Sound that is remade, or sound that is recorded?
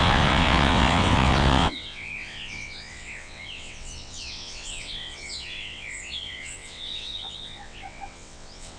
remade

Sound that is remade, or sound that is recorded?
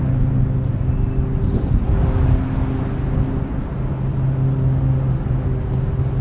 recorded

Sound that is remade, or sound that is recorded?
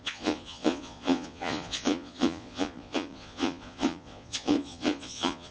remade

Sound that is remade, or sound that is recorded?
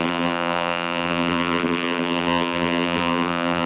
remade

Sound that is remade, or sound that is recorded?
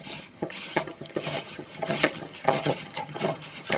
remade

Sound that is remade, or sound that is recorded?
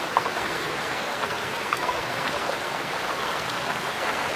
remade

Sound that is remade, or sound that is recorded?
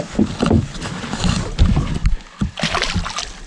recorded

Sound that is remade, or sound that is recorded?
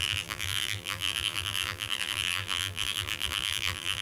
remade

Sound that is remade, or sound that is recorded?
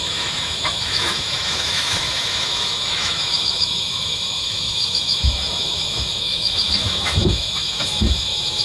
remade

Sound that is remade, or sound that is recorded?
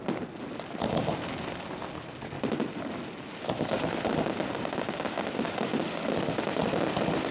recorded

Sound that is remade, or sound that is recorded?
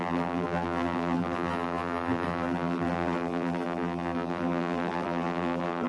remade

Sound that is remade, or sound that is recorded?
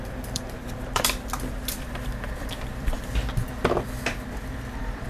remade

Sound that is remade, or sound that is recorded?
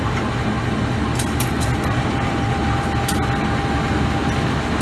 recorded